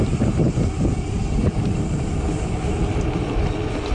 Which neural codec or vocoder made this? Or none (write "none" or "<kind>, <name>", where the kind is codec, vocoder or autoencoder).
none